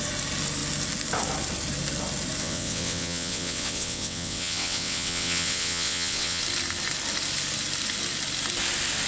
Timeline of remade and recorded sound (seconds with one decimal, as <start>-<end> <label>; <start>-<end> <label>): 0.0-2.4 recorded; 2.4-6.4 remade; 6.4-9.1 recorded